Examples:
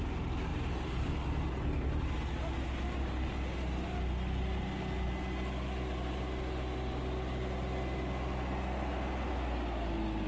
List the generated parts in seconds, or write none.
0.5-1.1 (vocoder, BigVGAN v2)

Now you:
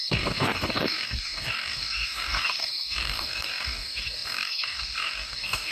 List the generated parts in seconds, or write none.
0.0-5.7 (codec, DAC)

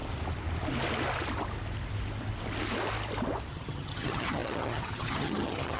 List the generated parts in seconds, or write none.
3.5-5.8 (vocoder, HiFi-GAN)